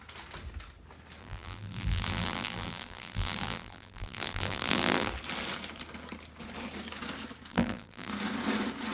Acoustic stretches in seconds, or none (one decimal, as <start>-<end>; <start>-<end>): 0.0-1.2; 5.1-7.5; 8.1-8.9